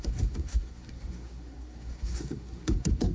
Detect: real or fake fake